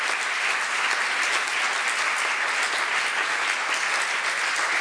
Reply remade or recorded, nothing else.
recorded